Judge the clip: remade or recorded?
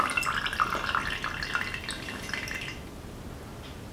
recorded